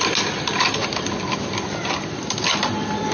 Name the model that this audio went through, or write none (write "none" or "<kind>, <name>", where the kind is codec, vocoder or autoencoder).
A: none